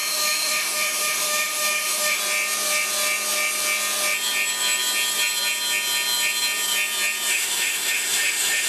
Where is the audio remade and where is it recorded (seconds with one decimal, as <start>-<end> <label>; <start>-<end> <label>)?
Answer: 0.0-2.2 remade; 2.2-7.3 recorded; 7.3-8.7 remade